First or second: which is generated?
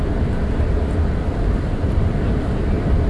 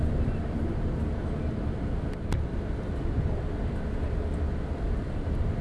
first